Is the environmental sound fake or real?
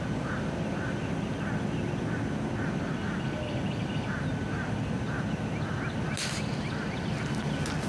real